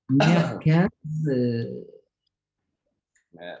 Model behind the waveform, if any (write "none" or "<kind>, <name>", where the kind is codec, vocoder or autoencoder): none